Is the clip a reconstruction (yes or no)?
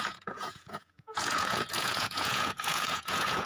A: yes